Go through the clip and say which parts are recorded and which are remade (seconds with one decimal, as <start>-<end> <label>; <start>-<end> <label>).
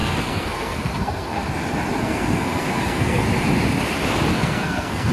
0.0-1.4 remade; 1.4-2.0 recorded; 2.0-3.3 remade; 3.3-4.3 recorded; 4.3-5.1 remade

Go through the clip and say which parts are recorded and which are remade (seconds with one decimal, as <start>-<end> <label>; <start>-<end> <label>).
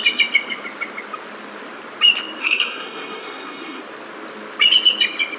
0.0-2.4 recorded; 2.4-3.8 remade; 3.8-5.4 recorded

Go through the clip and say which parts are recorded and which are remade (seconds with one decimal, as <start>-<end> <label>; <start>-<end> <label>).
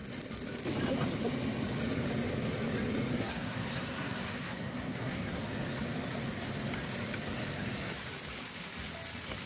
0.0-3.1 recorded; 3.1-5.4 remade; 5.4-9.5 recorded